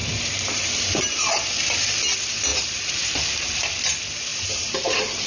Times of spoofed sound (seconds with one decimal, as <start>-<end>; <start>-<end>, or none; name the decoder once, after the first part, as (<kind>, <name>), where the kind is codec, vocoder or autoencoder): 0.0-0.7 (vocoder, BigVGAN v2); 2.5-3.9; 4.3-5.3